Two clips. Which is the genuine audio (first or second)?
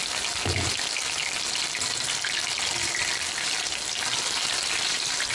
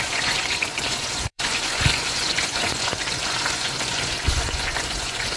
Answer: first